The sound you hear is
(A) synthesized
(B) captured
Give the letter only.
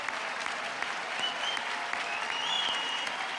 A